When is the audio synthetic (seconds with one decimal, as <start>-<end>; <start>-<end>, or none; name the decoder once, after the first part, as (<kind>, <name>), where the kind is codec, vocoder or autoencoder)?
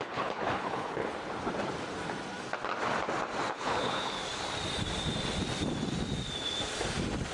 0.0-1.0 (codec, HILCodec); 3.5-4.2